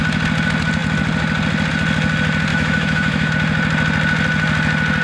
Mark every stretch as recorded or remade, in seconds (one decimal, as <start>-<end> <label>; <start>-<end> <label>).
0.0-2.5 recorded; 2.5-3.3 remade; 3.3-5.0 recorded